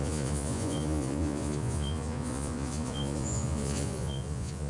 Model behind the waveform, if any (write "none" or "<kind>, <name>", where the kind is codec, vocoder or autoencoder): vocoder, Vocos